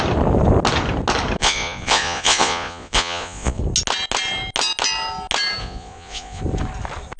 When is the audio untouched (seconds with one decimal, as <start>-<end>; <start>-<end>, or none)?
0.0-1.4; 3.6-5.6; 6.4-7.2